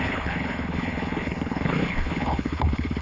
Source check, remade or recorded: remade